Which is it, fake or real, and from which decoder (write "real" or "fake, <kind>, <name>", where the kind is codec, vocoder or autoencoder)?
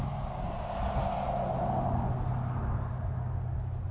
real